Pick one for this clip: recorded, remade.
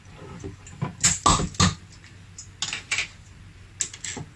recorded